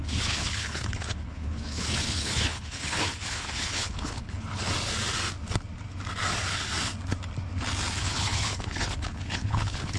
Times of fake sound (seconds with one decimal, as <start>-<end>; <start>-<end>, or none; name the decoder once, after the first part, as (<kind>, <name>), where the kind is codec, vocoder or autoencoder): 0.0-4.7 (codec, HILCodec); 8.0-10.0